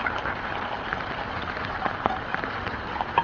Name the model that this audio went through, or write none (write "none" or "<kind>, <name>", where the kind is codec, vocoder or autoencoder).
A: none